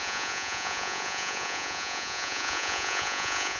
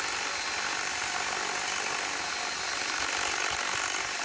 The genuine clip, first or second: second